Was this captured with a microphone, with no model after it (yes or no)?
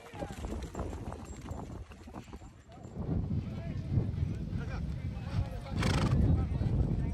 yes